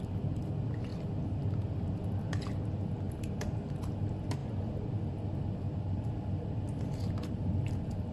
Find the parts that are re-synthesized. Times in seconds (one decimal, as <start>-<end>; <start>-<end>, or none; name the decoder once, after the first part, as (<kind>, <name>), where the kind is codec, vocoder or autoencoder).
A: none